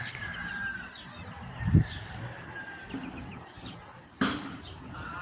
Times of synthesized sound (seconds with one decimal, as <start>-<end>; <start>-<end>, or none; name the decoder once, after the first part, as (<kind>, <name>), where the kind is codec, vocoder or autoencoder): 0.0-3.0 (vocoder, BigVGAN v2); 4.4-5.2